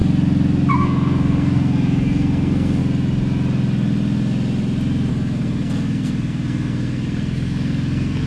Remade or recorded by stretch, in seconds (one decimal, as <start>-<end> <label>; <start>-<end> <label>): 0.0-0.7 recorded; 0.7-2.8 remade; 2.8-5.1 recorded; 5.1-8.3 remade